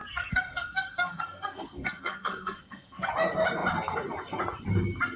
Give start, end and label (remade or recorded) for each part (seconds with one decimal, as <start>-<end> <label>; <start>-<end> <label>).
0.0-3.1 remade; 3.1-5.2 recorded